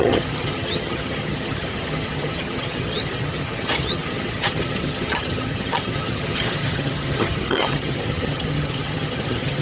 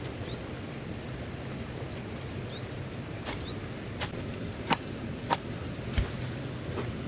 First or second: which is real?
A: second